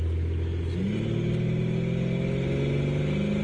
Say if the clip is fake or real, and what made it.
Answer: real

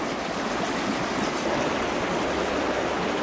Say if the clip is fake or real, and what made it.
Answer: real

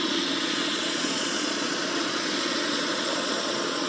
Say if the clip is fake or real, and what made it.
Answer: fake, vocoder, Vocos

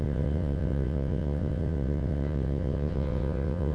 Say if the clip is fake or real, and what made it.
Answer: fake, vocoder, WaveNeXt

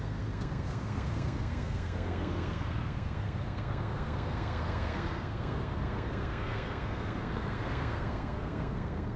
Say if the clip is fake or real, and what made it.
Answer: fake, codec, SNAC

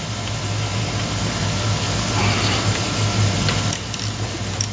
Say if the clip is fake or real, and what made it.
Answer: real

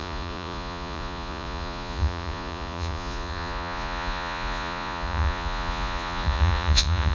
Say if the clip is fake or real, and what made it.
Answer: fake, vocoder, Vocos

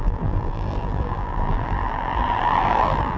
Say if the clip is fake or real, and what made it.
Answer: fake, vocoder, BigVGAN v2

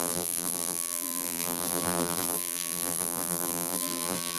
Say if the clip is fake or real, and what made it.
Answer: fake, vocoder, BigVGAN v2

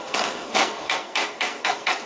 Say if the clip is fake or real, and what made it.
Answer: fake, codec, SNAC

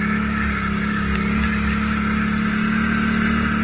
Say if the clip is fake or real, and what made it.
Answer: real